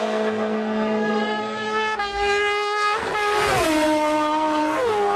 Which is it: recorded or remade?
remade